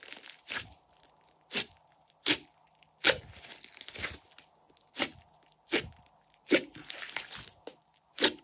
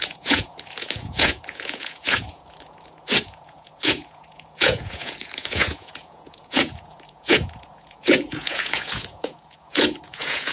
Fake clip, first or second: second